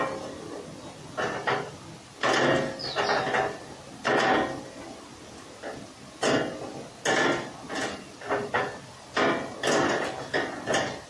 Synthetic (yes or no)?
no